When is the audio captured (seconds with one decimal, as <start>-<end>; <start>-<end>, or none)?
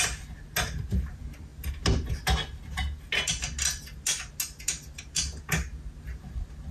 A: 0.0-6.7